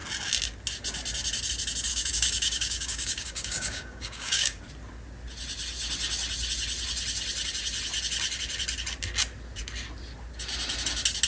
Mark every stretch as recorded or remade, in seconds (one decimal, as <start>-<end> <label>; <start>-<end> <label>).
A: 0.0-1.9 recorded; 1.9-4.6 remade; 4.6-11.3 recorded

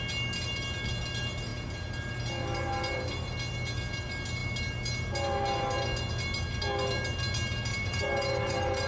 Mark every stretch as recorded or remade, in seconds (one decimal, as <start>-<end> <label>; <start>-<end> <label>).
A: 0.0-7.7 recorded; 7.7-8.9 remade

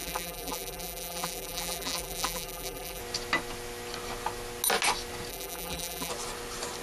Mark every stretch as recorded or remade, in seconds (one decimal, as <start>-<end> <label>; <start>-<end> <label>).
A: 0.0-3.0 remade; 3.0-5.3 recorded; 5.3-6.1 remade; 6.1-6.8 recorded